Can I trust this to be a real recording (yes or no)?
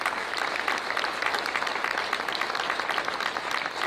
yes